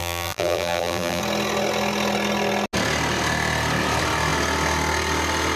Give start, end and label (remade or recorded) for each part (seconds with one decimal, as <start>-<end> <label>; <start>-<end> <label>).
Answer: 0.0-1.2 remade; 1.2-5.6 recorded